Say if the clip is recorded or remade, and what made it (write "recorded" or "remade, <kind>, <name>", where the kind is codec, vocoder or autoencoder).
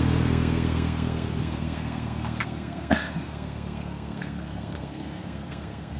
remade, codec, SNAC